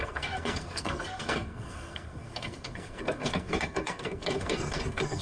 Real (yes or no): no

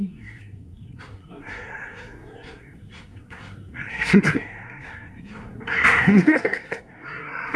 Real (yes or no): no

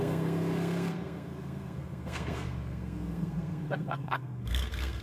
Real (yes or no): no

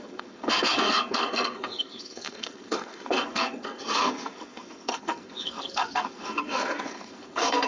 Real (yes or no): no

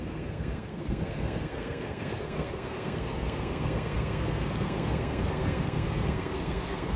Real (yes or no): no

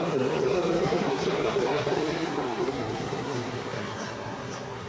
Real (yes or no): no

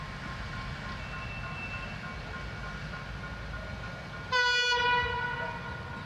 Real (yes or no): yes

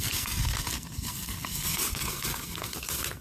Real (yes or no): no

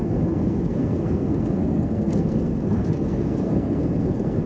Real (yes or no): no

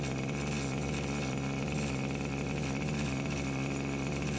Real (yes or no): yes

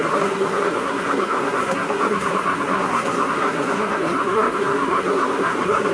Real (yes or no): no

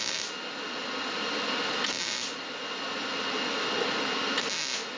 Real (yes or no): yes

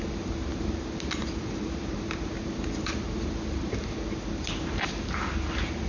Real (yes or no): yes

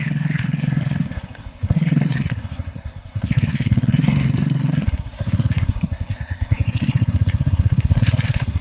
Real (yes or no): no